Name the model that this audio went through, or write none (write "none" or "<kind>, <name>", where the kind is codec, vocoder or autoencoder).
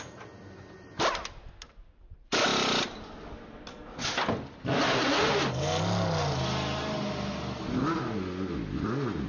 none